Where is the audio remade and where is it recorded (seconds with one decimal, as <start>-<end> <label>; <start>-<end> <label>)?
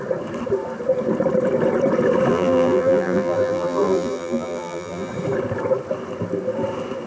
0.0-2.3 recorded; 2.3-5.1 remade; 5.1-7.1 recorded